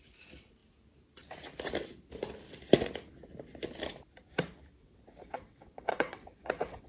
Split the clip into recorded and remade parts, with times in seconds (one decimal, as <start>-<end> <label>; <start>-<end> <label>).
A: 0.0-4.8 recorded; 4.8-6.9 remade

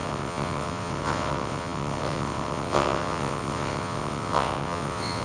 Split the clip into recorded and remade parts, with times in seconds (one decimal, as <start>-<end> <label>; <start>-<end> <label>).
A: 0.0-5.2 remade

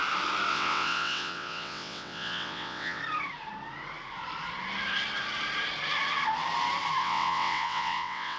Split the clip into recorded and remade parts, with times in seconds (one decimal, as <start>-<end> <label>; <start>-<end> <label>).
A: 0.0-0.5 recorded; 0.5-3.0 remade; 3.0-7.0 recorded; 7.0-8.4 remade

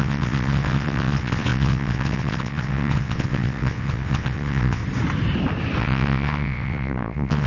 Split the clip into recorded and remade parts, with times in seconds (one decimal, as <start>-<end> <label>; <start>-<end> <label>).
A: 0.0-4.8 remade; 4.8-5.8 recorded; 5.8-7.5 remade

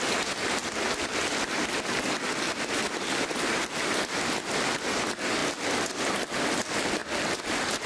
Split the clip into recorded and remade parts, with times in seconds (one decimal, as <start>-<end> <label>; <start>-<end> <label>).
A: 0.0-7.9 recorded

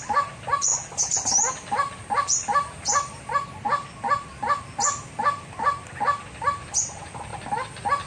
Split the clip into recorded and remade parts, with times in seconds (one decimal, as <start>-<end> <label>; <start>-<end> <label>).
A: 0.0-8.1 recorded

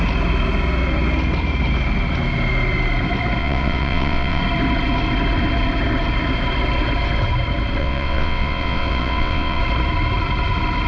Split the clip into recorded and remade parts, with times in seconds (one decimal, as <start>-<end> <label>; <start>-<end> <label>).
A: 0.0-3.4 recorded; 3.4-4.4 remade; 4.4-7.8 recorded; 7.8-9.6 remade; 9.6-10.9 recorded